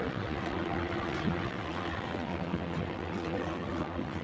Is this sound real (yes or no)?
no